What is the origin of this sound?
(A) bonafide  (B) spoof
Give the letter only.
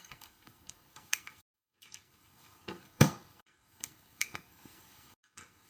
B